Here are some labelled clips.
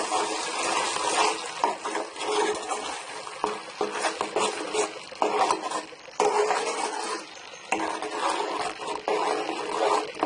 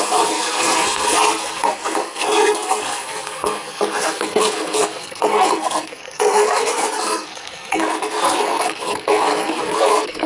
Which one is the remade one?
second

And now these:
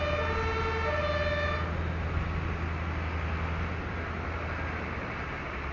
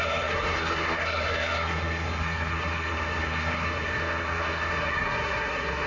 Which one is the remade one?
second